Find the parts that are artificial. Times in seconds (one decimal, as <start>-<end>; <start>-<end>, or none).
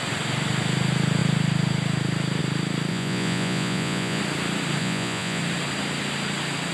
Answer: 2.9-4.2; 4.8-5.4